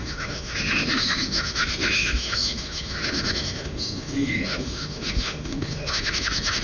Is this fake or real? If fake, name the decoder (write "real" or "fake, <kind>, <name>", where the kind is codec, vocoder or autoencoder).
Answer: fake, autoencoder, DAC-VAE